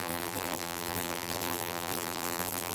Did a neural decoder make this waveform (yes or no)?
yes